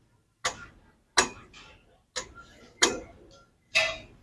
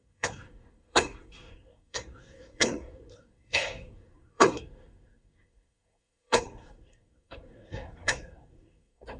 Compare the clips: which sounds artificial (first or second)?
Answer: second